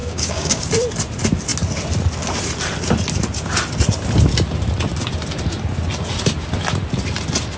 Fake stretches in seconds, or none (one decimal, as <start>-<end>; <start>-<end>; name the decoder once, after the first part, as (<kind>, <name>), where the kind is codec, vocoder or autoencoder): 0.0-0.7 (codec, DAC)